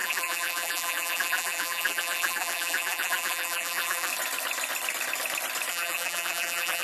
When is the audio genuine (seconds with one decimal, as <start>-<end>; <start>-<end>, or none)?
4.1-5.7

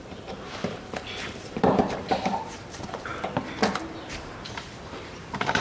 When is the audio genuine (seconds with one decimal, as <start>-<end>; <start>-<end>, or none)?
3.1-3.8

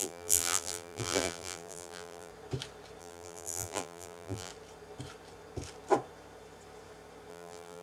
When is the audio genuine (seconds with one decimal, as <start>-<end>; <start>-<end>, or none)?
2.3-3.0; 4.5-7.3

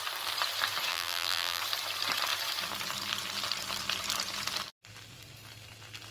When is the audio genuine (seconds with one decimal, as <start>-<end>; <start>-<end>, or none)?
0.0-0.9; 1.6-6.1

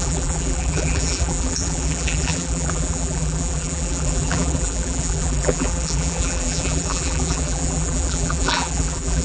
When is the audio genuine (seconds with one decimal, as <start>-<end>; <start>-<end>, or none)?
none

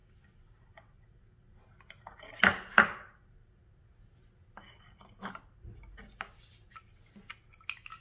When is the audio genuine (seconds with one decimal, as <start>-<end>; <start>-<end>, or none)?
0.0-8.0